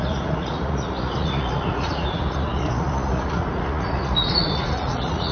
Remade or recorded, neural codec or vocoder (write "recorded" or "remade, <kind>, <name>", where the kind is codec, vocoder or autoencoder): remade, vocoder, Vocos